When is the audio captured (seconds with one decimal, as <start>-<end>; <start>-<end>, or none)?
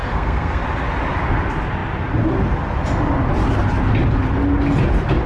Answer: 0.6-5.3